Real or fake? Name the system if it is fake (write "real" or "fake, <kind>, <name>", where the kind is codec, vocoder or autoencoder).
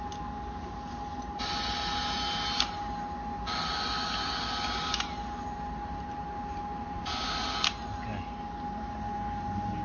real